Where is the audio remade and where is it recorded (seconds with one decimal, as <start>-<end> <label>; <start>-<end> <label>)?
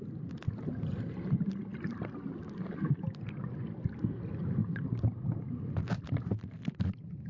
0.0-7.3 recorded